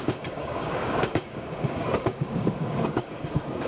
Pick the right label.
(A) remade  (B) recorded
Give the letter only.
A